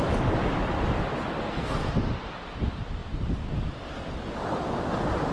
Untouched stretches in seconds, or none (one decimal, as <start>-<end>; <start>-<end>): 0.0-1.4; 1.9-5.3